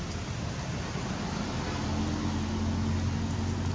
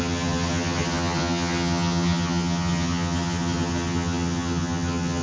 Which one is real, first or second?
first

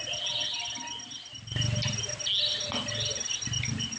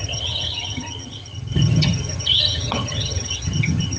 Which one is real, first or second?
first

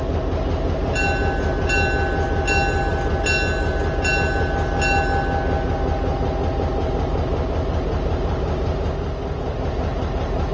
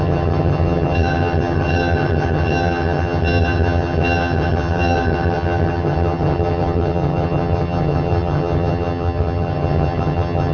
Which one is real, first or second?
first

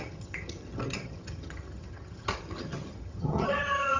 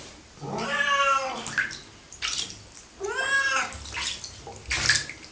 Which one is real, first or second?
second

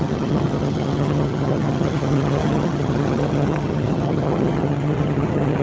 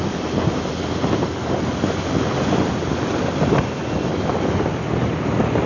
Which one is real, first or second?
second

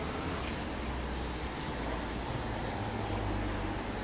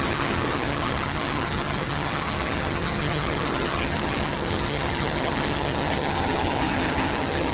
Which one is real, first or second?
first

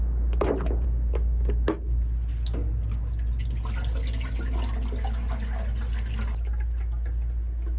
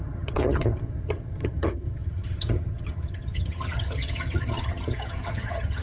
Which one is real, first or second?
first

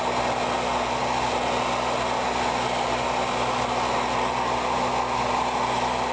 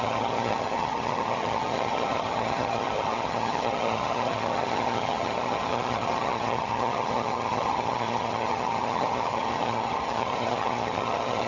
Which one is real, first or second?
first